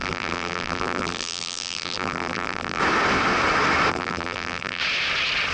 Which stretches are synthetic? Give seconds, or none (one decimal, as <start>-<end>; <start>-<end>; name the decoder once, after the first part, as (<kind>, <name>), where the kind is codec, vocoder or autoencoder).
0.0-2.8 (vocoder, BigVGAN v2); 3.9-4.8